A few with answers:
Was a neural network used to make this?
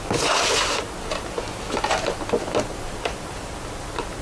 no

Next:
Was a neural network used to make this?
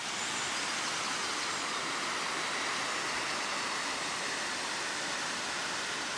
no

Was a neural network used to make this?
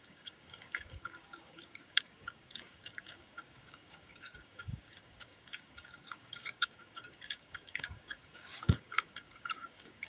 yes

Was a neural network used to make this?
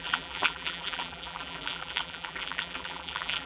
yes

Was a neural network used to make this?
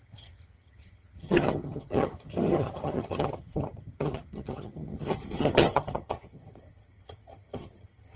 yes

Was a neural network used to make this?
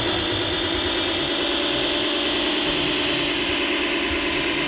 no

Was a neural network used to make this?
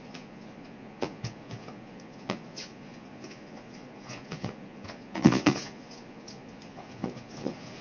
yes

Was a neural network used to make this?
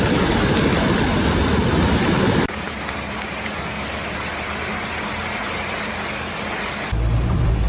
no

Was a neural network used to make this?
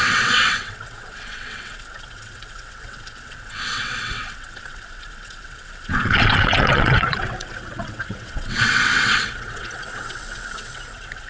yes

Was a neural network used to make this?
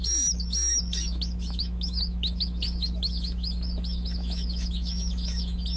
yes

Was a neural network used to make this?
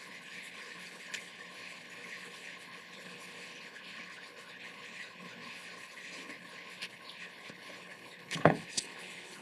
yes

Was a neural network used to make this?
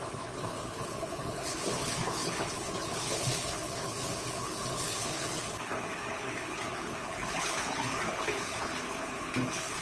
yes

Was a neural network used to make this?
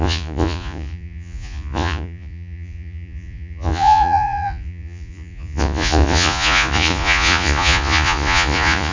yes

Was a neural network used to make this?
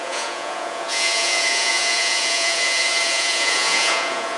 yes